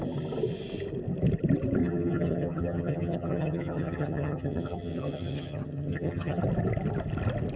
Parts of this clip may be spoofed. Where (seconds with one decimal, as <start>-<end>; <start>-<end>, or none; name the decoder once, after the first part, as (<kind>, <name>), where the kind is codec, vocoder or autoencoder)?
1.8-6.4 (vocoder, HiFi-GAN)